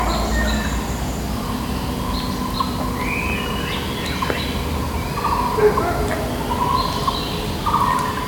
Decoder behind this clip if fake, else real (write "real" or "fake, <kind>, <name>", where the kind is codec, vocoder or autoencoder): real